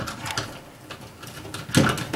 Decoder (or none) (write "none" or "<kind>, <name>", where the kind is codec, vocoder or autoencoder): none